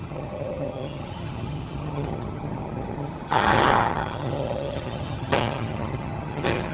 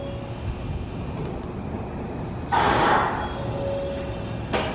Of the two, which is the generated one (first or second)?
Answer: first